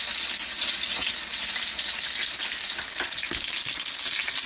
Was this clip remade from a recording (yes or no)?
no